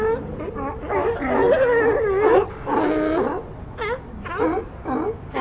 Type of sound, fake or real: real